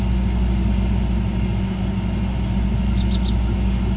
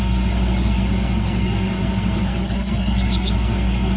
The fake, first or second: second